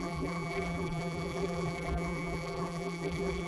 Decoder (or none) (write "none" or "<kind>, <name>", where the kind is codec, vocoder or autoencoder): vocoder, BigVGAN v2